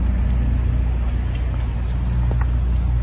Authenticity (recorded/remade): recorded